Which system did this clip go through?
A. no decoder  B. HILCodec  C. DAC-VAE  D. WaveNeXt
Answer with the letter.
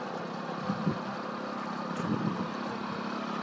A